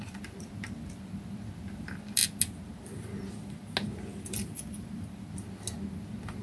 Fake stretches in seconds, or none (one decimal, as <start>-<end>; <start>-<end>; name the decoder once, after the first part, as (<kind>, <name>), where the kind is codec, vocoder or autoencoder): 0.0-2.2 (vocoder, BigVGAN v2); 6.0-6.4